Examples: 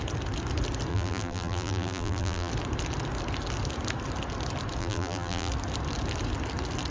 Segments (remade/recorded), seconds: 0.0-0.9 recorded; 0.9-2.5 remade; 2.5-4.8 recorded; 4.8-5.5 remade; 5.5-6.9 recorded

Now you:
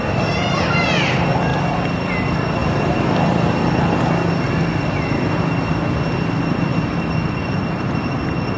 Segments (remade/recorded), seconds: 0.0-6.7 recorded; 6.7-8.6 remade

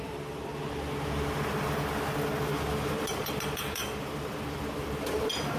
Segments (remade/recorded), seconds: 0.0-0.5 remade; 0.5-2.9 recorded; 2.9-5.6 remade

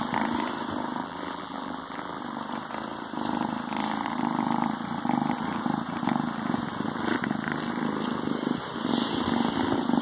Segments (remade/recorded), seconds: 0.0-1.0 recorded; 1.0-2.2 remade; 2.2-10.0 recorded